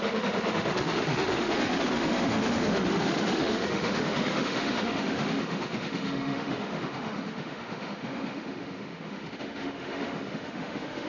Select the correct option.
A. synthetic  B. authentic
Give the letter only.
A